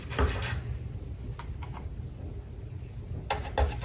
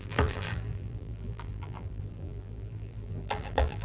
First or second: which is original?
first